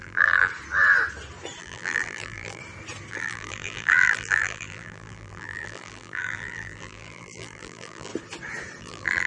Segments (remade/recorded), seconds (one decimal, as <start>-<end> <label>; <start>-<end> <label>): 0.0-0.5 remade; 0.5-1.6 recorded; 1.6-2.6 remade; 2.6-3.1 recorded; 3.1-8.1 remade; 8.1-8.8 recorded; 8.8-9.3 remade